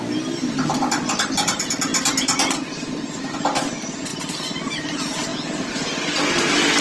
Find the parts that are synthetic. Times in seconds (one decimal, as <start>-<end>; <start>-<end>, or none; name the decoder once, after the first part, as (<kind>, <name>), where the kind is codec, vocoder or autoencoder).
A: none